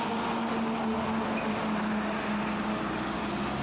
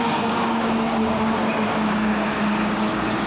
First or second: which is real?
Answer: first